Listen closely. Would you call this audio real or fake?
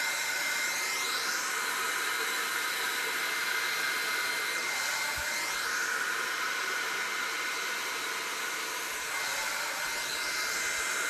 fake